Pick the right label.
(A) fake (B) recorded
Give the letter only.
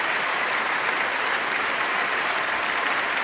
A